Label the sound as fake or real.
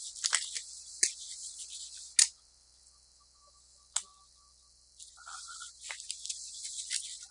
real